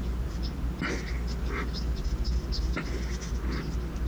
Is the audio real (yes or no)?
yes